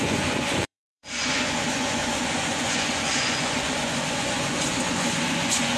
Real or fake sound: fake